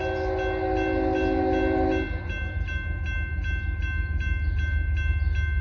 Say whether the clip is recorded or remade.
recorded